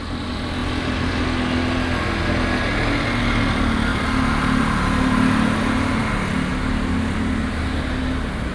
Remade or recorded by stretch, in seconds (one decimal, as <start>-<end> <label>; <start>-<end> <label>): 0.0-8.5 recorded